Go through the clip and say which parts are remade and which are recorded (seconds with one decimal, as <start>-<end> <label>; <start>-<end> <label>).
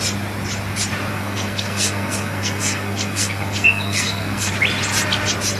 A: 0.0-1.1 recorded; 1.1-4.5 remade; 4.5-5.6 recorded